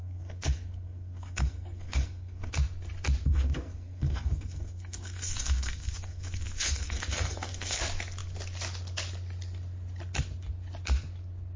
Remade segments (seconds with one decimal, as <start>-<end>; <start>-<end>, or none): 0.0-2.5; 3.3-7.8